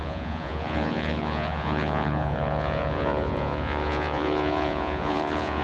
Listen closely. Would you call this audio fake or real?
fake